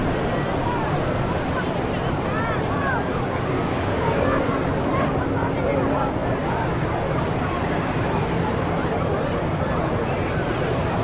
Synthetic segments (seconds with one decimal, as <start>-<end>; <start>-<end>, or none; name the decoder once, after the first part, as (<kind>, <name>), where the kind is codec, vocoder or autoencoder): 3.1-4.4 (codec, DAC)